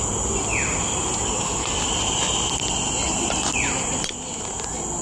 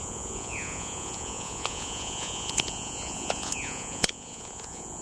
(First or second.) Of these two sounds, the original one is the first